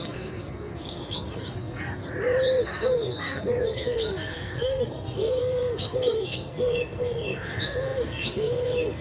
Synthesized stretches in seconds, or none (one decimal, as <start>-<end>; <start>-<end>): 0.0-2.0; 2.6-9.0